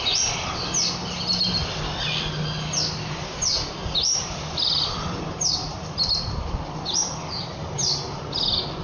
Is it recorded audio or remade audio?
recorded